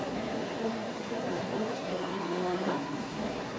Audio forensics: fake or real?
fake